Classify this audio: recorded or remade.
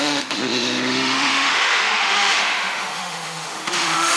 remade